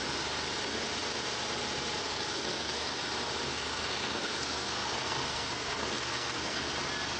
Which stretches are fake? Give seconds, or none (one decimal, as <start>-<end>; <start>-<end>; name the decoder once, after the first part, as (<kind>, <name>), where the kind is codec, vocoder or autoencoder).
2.0-3.0 (codec, SNAC); 3.5-6.7